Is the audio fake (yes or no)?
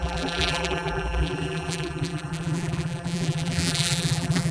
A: yes